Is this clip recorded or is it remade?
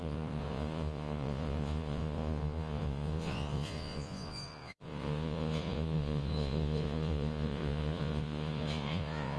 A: remade